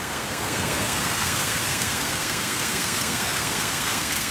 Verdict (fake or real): fake